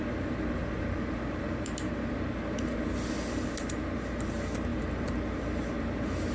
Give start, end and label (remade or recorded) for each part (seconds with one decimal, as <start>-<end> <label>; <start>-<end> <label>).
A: 0.0-6.3 recorded